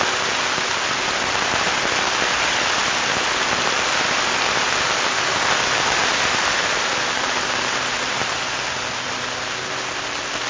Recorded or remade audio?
recorded